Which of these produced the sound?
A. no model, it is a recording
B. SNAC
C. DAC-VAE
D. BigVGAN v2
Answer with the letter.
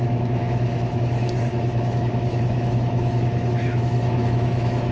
C